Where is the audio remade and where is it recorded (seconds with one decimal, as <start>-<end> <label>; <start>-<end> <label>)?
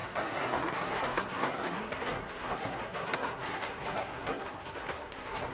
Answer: 0.0-5.5 remade